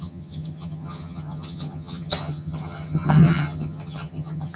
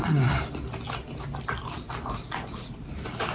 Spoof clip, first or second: first